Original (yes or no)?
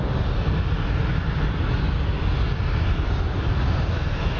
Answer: yes